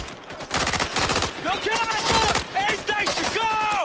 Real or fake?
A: real